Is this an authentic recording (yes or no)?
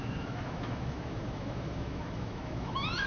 no